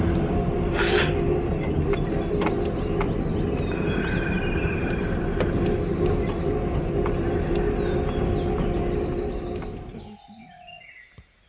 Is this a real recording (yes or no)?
yes